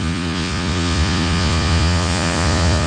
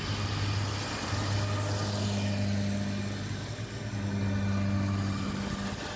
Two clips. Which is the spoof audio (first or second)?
first